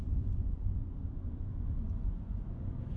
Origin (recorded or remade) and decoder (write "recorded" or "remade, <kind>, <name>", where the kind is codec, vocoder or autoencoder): remade, vocoder, Vocos